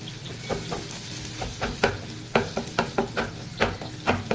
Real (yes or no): yes